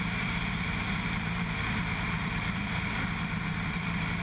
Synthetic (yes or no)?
yes